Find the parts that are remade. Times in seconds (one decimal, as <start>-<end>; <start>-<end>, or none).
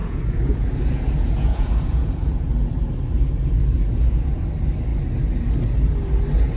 0.0-2.4; 3.6-4.4